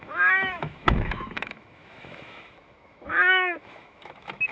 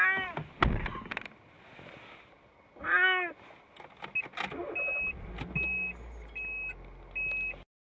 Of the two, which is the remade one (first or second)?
first